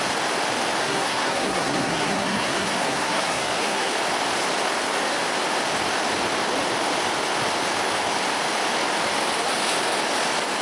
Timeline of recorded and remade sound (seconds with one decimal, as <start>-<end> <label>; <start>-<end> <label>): 0.0-0.8 recorded; 0.8-3.9 remade; 3.9-10.6 recorded